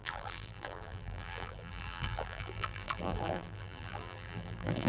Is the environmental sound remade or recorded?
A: remade